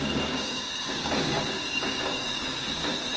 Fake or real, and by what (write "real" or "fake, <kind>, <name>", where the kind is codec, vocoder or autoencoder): fake, codec, DAC